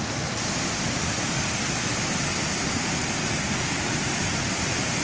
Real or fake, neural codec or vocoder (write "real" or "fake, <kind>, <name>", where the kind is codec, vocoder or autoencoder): real